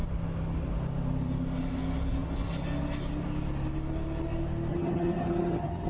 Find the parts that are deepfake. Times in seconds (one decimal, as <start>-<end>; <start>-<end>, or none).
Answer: 4.7-5.9